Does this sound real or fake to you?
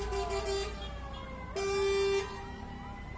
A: real